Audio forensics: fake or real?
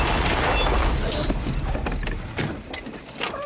real